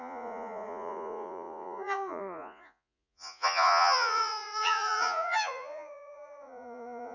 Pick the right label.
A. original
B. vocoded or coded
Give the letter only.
B